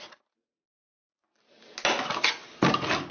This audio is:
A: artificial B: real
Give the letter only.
B